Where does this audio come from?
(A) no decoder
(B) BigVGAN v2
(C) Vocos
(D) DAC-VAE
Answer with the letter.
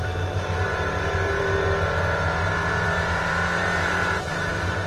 B